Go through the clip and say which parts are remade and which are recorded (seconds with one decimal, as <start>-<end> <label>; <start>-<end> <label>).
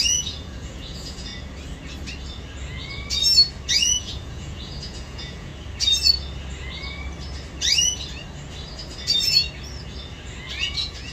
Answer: 0.0-1.3 remade; 1.3-3.7 recorded; 3.7-5.5 remade; 5.5-10.6 recorded; 10.6-11.1 remade